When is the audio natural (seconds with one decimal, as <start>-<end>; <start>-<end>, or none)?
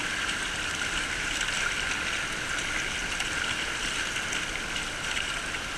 0.0-5.8